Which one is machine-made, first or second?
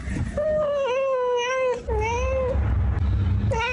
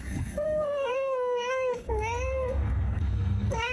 second